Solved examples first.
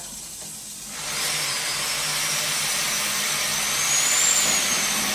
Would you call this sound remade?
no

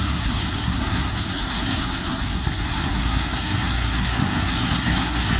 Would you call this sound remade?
yes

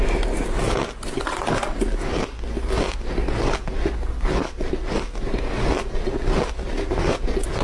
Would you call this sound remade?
no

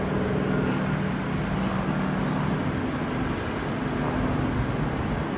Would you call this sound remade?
no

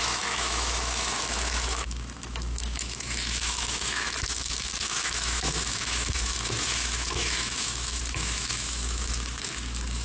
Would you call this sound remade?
yes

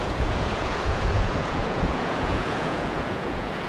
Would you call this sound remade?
yes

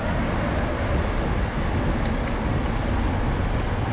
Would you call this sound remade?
no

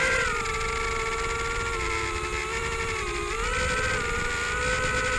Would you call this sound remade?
no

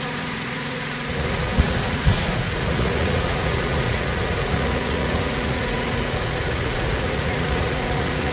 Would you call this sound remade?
yes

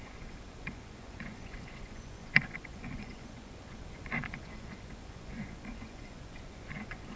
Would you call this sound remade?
yes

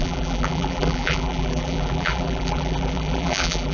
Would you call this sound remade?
yes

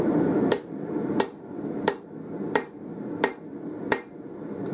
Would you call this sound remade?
yes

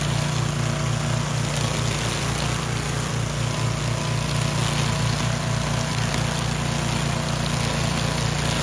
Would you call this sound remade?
no